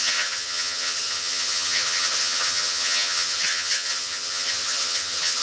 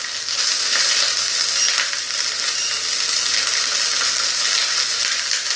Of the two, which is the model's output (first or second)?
first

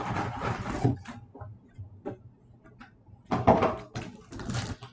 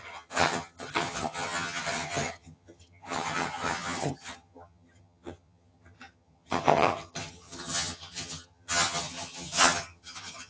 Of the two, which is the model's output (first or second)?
second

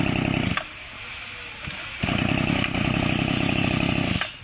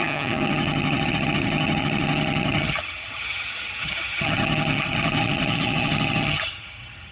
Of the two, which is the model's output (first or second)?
second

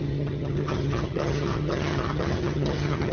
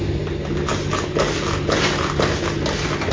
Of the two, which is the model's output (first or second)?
first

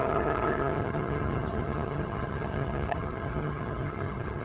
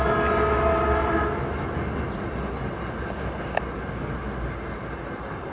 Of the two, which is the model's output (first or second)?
first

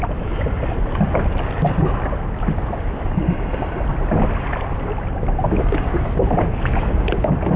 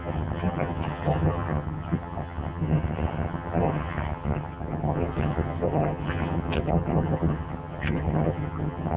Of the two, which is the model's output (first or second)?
second